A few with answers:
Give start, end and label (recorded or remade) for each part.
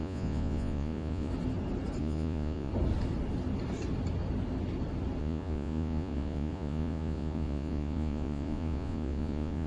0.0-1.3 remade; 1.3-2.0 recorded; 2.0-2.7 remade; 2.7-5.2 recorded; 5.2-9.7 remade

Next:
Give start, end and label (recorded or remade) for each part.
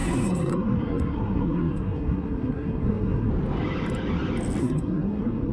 0.0-3.3 remade; 3.3-4.6 recorded; 4.6-5.5 remade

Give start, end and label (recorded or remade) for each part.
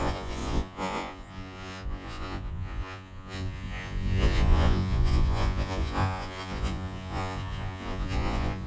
0.0-8.7 remade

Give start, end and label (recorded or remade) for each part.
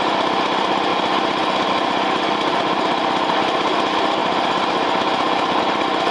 0.0-0.9 remade; 0.9-1.7 recorded; 1.7-4.2 remade; 4.2-5.6 recorded; 5.6-6.1 remade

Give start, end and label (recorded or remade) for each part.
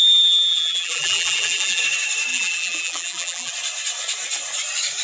0.0-0.5 recorded; 0.5-1.8 remade; 1.8-2.3 recorded; 2.3-3.5 remade; 3.5-5.0 recorded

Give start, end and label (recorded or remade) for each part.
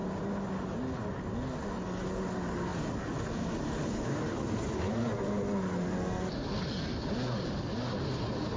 0.0-8.6 recorded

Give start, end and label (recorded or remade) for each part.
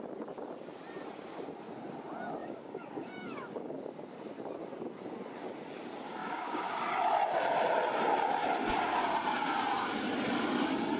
0.0-2.4 recorded; 2.4-3.8 remade; 3.8-6.2 recorded; 6.2-6.7 remade; 6.7-11.0 recorded